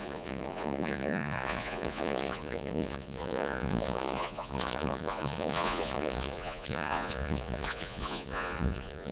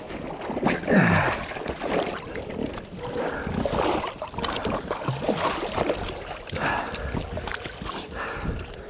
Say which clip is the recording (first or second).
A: second